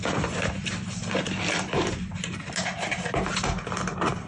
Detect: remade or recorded recorded